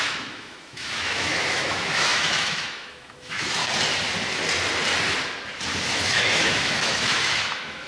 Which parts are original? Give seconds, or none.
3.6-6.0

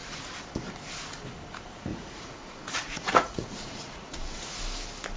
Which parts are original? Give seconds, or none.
0.0-1.9; 4.5-5.2

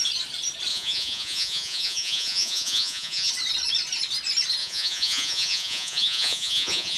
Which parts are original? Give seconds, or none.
0.0-0.7; 3.3-4.6

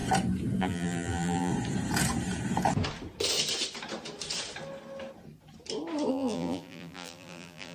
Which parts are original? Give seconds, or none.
0.0-0.6; 1.5-6.1